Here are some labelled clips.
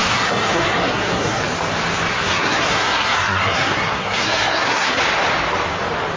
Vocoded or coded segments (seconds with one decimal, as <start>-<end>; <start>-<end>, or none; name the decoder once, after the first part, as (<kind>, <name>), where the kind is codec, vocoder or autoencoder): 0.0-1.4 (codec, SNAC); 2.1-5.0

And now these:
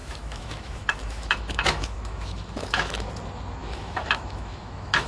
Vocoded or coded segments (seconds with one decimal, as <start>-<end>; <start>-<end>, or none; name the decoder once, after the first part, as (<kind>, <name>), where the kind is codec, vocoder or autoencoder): 0.0-3.1 (autoencoder, DAC-VAE); 3.6-5.1

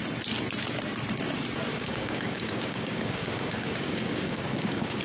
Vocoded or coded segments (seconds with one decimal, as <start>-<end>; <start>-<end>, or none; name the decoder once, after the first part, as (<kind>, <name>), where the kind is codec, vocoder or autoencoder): 1.7-5.0 (codec, DAC)

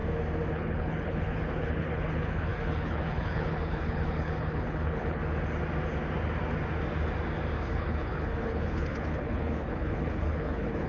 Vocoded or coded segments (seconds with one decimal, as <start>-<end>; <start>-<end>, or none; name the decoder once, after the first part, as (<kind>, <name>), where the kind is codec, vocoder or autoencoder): 0.5-5.2 (codec, HILCodec); 7.7-10.9

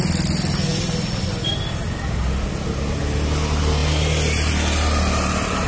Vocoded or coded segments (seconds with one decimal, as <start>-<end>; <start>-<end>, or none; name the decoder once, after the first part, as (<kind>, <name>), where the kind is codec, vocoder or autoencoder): none

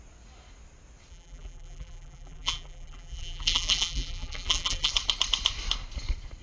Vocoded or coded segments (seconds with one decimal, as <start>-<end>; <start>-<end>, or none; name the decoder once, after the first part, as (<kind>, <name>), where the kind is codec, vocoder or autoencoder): 1.1-4.9 (vocoder, BigVGAN v2)